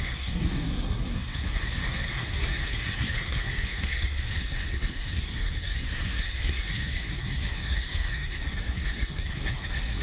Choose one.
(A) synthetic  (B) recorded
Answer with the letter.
A